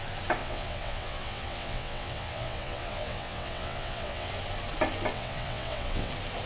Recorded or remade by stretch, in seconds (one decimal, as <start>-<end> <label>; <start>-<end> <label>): 0.0-0.4 recorded; 0.4-4.3 remade; 4.3-5.1 recorded; 5.1-6.1 remade; 6.1-6.5 recorded